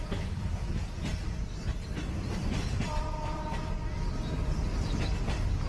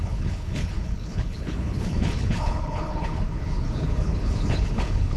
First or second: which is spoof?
second